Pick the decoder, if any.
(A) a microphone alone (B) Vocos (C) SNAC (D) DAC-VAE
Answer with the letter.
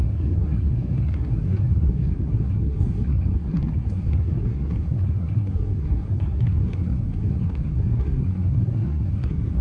C